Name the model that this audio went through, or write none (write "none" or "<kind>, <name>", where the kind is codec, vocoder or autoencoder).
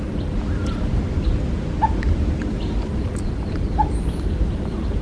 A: none